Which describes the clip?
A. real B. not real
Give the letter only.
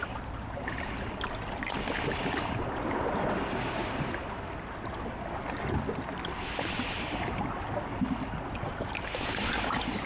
A